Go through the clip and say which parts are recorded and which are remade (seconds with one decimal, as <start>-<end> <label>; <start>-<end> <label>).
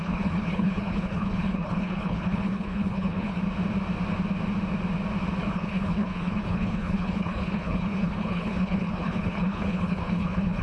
0.0-3.4 remade; 3.4-5.4 recorded; 5.4-10.6 remade